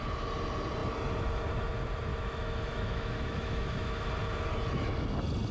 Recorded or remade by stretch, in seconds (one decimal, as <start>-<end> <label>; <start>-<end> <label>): 0.0-2.1 recorded; 2.1-4.1 remade; 4.1-5.5 recorded